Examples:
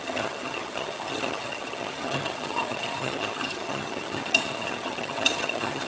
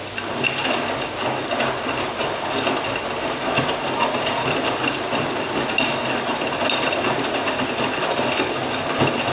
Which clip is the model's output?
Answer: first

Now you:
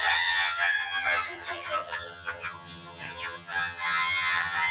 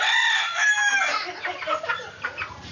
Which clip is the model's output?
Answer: first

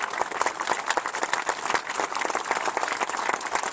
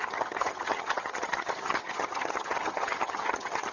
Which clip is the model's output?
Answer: second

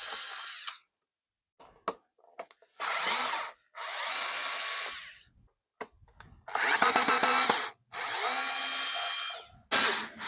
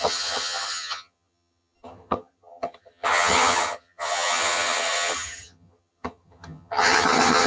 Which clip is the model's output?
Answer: second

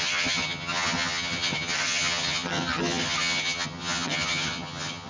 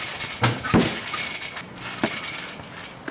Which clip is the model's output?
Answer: first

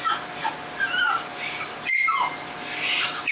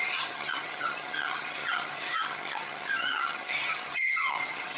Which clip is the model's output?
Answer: second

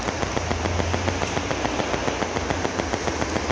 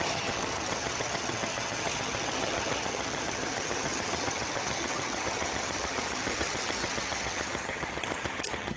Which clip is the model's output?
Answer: second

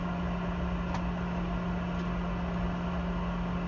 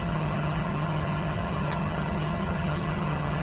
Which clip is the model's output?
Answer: second